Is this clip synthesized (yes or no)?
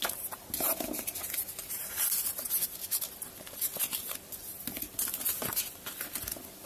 no